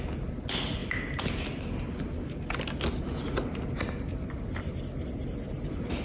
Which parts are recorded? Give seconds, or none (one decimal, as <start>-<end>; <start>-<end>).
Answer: 0.0-6.0